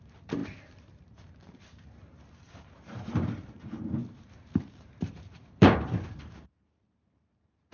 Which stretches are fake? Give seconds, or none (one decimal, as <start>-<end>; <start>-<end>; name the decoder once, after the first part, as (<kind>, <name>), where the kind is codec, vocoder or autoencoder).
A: 0.0-7.7 (vocoder, BigVGAN v2)